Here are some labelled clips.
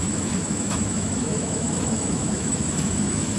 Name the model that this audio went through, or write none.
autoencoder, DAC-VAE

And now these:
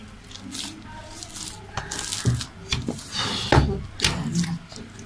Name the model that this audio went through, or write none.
none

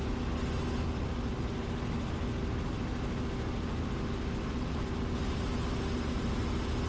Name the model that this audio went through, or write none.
none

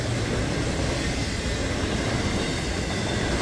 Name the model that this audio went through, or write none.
none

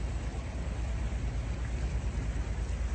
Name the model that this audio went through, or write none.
none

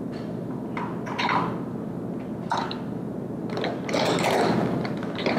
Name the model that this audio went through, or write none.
none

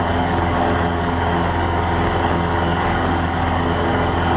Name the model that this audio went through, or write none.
codec, DAC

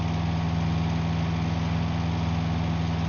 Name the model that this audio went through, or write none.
none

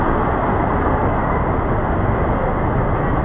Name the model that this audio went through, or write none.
none